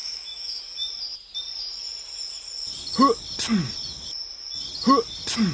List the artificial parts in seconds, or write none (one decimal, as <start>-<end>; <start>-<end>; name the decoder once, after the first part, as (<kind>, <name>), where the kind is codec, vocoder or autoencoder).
0.0-0.6 (autoencoder, DAC-VAE)